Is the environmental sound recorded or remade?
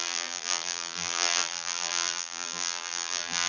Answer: remade